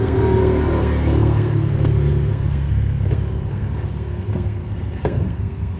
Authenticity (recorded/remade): remade